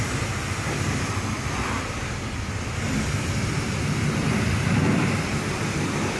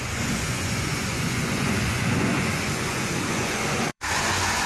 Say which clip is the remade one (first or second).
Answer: second